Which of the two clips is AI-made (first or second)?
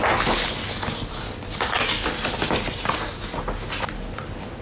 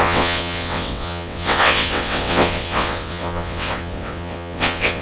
second